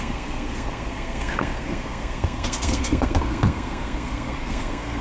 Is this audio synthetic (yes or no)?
yes